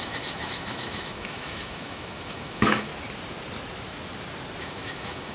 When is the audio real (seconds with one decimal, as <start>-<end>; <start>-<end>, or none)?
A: 2.9-4.6

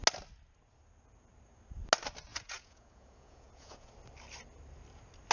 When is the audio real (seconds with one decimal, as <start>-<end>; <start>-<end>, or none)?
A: 0.0-2.3; 3.9-5.3

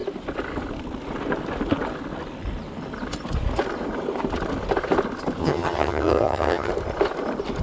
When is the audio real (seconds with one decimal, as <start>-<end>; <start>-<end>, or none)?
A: 0.0-5.4; 6.7-7.6